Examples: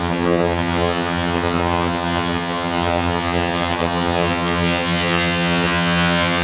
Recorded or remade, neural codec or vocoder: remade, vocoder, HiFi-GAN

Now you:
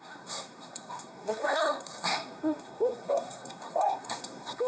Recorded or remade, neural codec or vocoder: remade, codec, SNAC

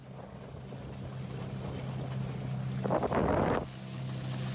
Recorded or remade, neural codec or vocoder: recorded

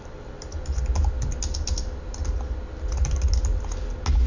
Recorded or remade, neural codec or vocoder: recorded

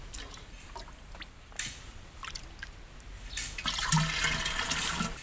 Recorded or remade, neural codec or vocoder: recorded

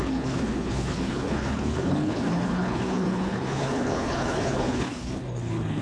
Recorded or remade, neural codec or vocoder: remade, codec, HILCodec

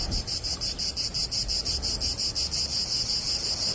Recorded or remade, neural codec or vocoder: recorded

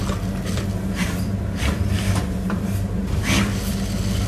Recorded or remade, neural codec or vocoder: recorded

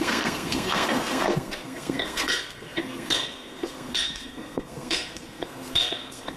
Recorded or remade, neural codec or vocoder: remade, codec, SNAC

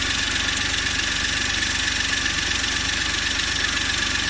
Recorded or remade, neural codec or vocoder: recorded